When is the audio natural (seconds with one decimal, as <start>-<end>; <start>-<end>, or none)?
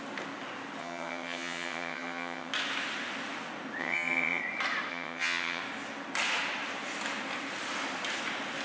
0.0-0.8; 2.5-3.8; 4.4-4.9; 5.6-8.6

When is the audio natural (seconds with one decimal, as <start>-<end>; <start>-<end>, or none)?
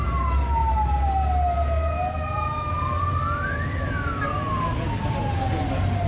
0.0-6.1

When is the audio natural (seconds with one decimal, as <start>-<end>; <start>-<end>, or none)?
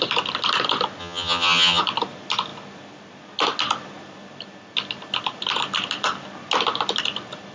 0.0-1.0; 1.8-7.5